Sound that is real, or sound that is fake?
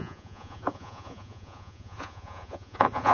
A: fake